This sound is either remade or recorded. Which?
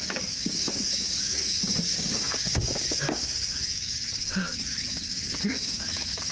remade